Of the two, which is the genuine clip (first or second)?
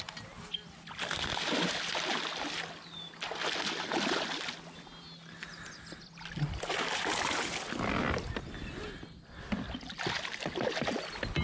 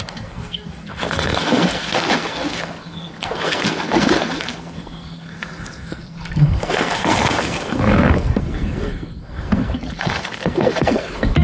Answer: first